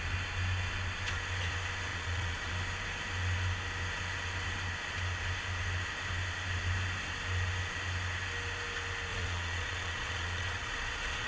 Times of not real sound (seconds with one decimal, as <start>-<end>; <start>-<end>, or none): 1.9-2.5; 9.1-11.3